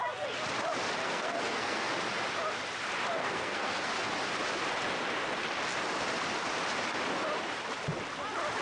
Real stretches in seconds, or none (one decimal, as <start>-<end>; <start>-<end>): 0.0-1.0; 1.9-3.2; 3.9-8.6